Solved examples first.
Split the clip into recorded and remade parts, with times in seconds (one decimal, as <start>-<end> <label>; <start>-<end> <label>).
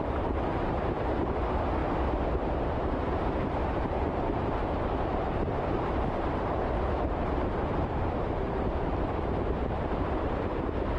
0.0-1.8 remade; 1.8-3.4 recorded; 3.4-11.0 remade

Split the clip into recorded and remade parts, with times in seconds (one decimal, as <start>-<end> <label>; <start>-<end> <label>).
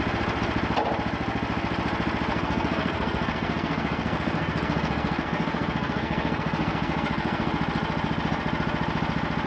0.0-2.3 recorded; 2.3-7.5 remade; 7.5-9.5 recorded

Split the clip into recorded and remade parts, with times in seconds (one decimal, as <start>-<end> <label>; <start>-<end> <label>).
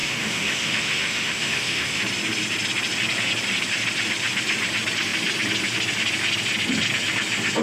0.0-2.0 remade; 2.0-7.6 recorded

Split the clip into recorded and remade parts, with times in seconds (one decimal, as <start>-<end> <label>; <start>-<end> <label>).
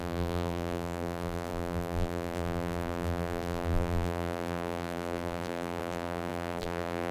0.0-7.1 remade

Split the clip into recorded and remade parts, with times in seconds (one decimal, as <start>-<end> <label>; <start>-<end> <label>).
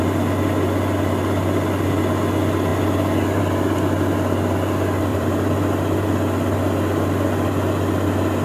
0.0-5.1 recorded; 5.1-5.7 remade; 5.7-8.4 recorded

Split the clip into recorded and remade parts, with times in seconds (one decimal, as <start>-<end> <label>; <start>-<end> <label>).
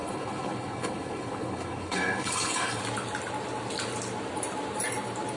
0.0-2.8 remade; 2.8-5.4 recorded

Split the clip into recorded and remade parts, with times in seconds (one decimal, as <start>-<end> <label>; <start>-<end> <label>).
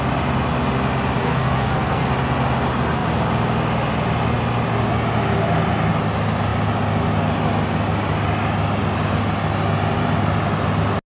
0.0-1.2 recorded; 1.2-2.1 remade; 2.1-11.1 recorded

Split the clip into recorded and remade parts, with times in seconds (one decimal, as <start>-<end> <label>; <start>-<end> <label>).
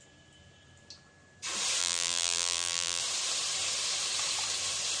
0.0-1.8 recorded; 1.8-3.0 remade; 3.0-5.0 recorded